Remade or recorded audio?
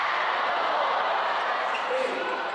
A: remade